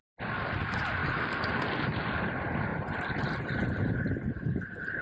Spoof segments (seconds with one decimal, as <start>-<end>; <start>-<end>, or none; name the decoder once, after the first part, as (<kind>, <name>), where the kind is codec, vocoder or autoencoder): 0.0-1.0 (vocoder, BigVGAN v2); 2.2-2.7; 4.1-5.0

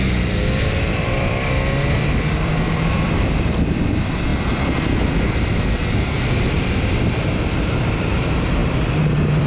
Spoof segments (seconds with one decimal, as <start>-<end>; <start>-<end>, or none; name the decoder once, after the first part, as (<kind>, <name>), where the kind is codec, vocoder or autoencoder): 0.0-8.6 (vocoder, BigVGAN v2)

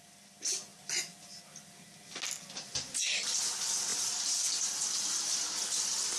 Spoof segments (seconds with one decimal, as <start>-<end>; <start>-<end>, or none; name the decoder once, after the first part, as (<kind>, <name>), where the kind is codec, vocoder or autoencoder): 3.9-5.3 (vocoder, BigVGAN v2)

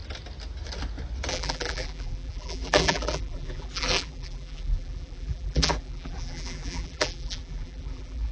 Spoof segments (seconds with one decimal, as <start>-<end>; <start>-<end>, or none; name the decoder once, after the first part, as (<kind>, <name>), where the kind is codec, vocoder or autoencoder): 1.3-8.3 (vocoder, BigVGAN v2)

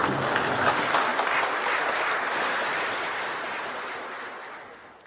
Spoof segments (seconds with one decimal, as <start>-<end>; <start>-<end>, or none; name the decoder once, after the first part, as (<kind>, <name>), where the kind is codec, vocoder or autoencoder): none